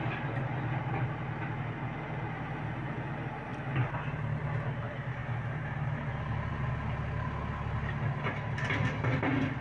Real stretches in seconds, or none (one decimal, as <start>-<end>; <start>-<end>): 0.0-9.6